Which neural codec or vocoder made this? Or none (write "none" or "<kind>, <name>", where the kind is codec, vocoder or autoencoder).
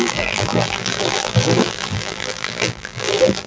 vocoder, BigVGAN v2